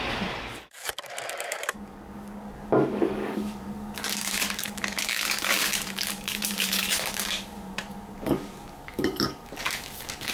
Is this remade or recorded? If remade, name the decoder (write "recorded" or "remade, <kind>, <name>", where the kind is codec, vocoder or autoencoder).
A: remade, codec, DAC